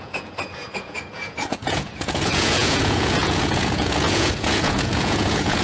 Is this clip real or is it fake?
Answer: fake